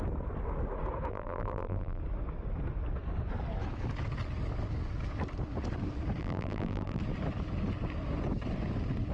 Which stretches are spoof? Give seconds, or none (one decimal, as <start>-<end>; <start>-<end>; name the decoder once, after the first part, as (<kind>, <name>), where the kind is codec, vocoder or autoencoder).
1.1-2.0 (vocoder, BigVGAN v2); 6.2-7.0